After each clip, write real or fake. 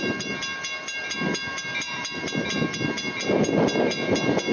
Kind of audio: real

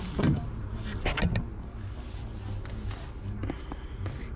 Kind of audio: real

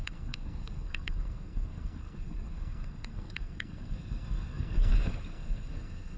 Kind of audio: fake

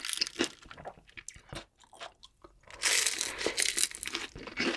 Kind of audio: real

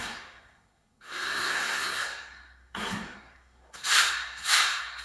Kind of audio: fake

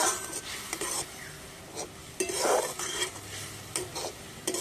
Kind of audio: real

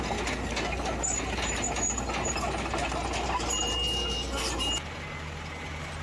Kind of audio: real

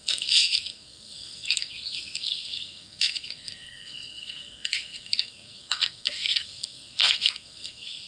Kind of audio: fake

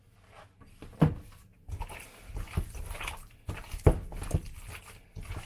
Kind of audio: real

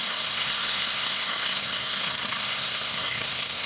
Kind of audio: fake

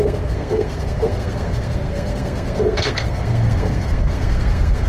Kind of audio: fake